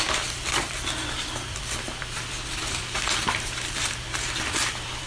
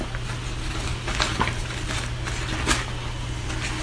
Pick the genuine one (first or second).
second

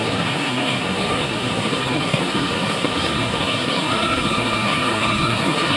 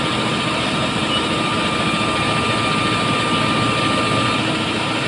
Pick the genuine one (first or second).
second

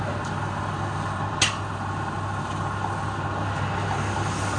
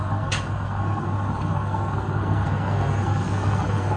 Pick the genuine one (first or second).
first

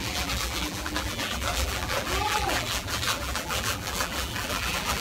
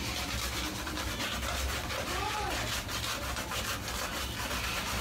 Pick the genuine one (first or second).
second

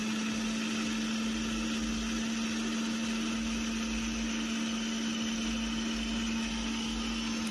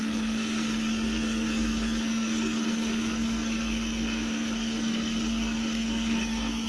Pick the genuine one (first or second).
first